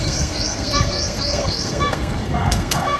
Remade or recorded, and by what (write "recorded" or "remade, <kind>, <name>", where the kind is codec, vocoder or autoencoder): remade, codec, SNAC